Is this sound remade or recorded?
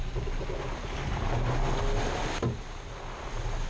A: recorded